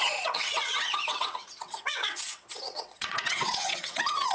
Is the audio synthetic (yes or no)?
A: yes